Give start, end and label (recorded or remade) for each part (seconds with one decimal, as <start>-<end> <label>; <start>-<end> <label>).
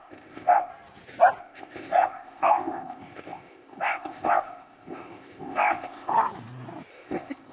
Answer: 0.0-0.7 remade; 0.7-1.4 recorded; 1.4-6.1 remade; 6.1-6.9 recorded; 6.9-7.5 remade